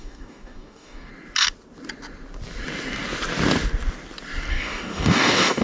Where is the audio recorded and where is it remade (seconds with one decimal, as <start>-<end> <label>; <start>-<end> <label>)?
0.0-1.1 remade; 1.1-4.5 recorded; 4.5-5.6 remade